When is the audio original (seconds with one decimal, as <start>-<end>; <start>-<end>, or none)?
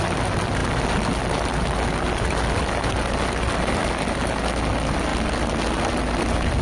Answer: 0.0-6.6